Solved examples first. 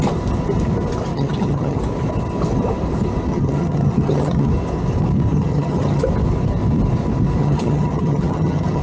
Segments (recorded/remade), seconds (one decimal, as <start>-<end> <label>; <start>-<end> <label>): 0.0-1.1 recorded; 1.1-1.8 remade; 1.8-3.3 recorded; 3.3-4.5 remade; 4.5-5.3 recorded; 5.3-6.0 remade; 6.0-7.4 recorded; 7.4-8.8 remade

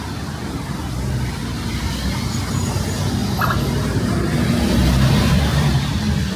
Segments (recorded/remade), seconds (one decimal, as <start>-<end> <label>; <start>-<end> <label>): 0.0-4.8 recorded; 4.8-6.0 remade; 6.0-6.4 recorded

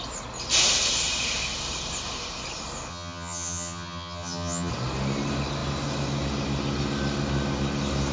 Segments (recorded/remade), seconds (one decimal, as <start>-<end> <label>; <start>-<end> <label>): 0.0-2.9 recorded; 2.9-4.7 remade; 4.7-8.1 recorded